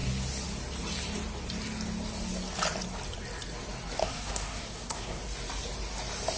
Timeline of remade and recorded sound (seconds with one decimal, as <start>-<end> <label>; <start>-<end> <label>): 0.0-4.0 recorded; 4.0-5.2 remade; 5.2-6.4 recorded